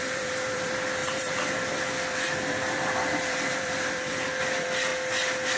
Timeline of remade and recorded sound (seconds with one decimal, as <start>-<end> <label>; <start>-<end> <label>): 0.0-4.9 remade; 4.9-5.6 recorded